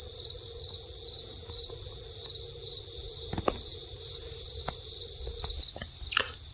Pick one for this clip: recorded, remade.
recorded